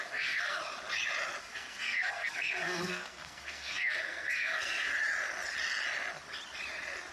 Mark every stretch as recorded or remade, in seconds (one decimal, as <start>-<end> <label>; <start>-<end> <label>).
0.0-0.6 remade; 0.6-1.4 recorded; 1.4-4.9 remade; 4.9-7.1 recorded